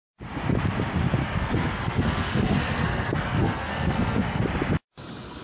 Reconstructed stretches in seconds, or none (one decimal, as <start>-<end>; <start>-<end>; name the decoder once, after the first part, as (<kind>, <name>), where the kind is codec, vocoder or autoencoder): 1.2-4.4 (codec, SNAC)